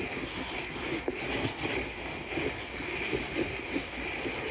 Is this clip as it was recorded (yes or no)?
yes